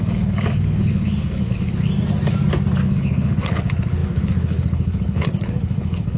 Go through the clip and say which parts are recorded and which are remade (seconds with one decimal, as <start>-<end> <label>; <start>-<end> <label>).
0.0-1.9 remade; 1.9-2.9 recorded; 2.9-6.2 remade